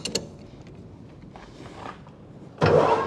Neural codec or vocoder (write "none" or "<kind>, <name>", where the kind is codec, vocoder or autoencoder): none